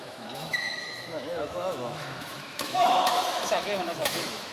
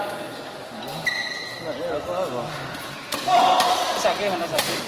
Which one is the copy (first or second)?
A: first